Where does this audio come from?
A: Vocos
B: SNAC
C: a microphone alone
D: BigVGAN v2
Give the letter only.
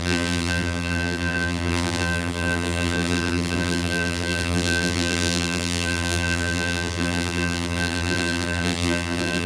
D